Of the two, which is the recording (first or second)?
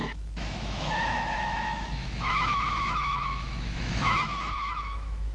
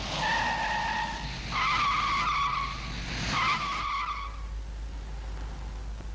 second